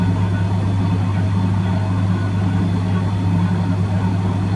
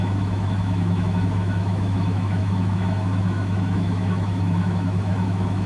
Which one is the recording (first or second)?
first